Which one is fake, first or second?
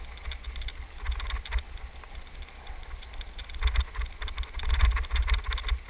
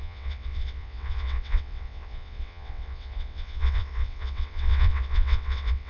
second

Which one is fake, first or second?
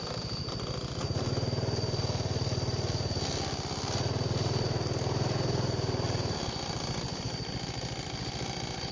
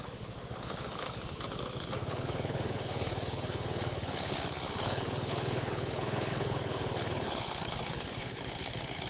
second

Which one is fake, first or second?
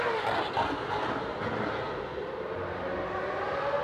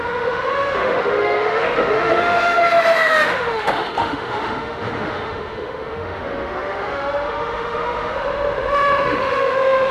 second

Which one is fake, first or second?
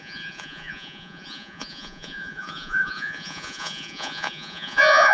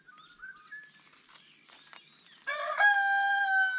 first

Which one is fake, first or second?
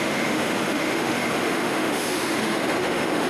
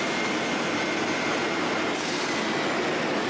first